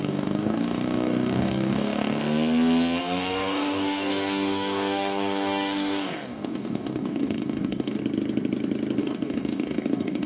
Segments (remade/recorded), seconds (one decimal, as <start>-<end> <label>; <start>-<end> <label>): 0.0-2.2 remade; 2.2-3.0 recorded; 3.0-8.0 remade; 8.0-9.0 recorded; 9.0-10.3 remade